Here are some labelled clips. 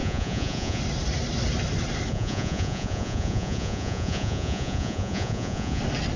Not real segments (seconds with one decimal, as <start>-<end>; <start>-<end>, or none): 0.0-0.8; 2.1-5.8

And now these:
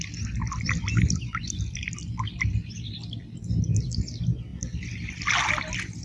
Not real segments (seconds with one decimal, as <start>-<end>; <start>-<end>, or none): none

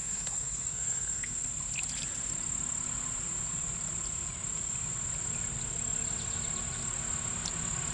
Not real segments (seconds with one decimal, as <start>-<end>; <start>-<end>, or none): 0.0-1.5